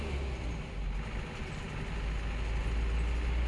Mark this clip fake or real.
real